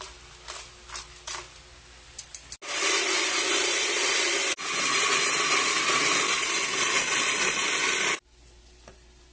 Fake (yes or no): no